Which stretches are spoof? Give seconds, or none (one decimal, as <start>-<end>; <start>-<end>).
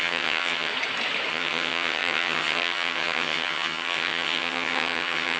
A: 0.0-0.7; 1.3-5.4